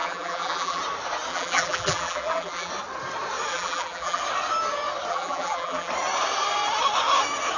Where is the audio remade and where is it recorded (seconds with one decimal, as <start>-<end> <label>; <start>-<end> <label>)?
0.0-0.8 remade; 0.8-1.3 recorded; 1.3-2.7 remade; 2.7-3.5 recorded; 3.5-4.2 remade; 4.2-5.1 recorded; 5.1-5.9 remade; 5.9-7.6 recorded